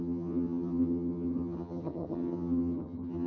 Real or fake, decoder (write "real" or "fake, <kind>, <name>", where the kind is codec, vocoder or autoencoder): fake, vocoder, HiFi-GAN